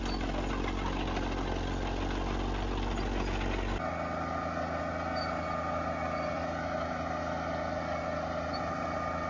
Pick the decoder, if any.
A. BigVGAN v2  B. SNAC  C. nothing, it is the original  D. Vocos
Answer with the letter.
C